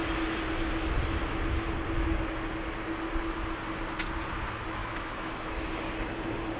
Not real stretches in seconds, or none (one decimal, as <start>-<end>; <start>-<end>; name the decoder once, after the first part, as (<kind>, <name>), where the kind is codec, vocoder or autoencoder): 4.8-5.5 (autoencoder, DAC-VAE)